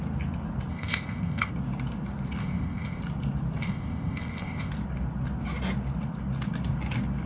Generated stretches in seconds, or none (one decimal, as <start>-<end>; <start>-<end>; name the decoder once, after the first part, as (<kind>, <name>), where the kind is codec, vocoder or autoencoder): 0.7-1.5 (codec, ZipCodec); 2.4-3.0; 3.6-4.7